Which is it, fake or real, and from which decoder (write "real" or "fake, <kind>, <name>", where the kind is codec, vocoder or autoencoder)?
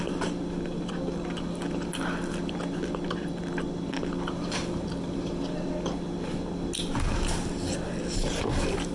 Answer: real